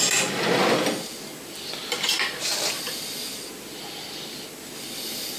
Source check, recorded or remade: recorded